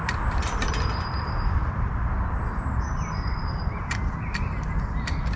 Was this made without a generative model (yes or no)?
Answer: yes